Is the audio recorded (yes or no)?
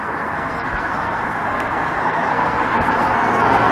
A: no